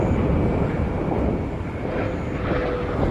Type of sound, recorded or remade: recorded